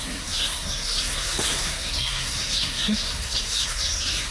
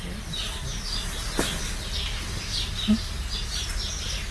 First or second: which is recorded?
second